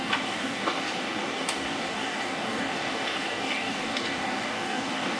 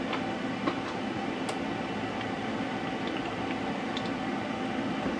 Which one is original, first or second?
second